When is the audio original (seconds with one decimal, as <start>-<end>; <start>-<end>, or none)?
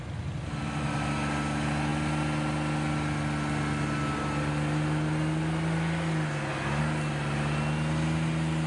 0.0-8.7